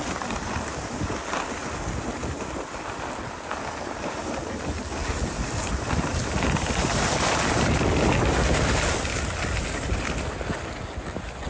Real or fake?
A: real